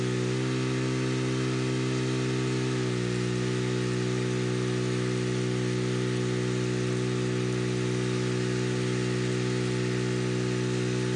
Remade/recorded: recorded